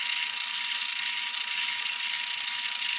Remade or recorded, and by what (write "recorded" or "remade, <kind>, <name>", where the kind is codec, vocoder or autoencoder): recorded